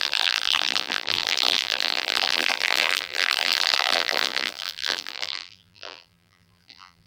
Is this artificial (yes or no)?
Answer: yes